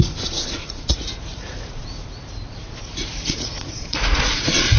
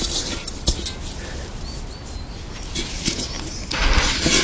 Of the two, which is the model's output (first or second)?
first